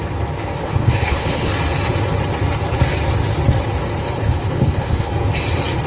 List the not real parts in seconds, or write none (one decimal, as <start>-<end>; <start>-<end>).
0.6-1.5; 4.0-5.1